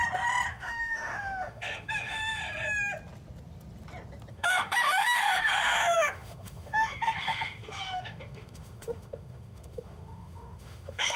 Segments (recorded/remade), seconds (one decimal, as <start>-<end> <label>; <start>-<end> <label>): 0.0-0.5 recorded; 0.5-2.4 remade; 2.4-4.3 recorded; 4.3-11.2 remade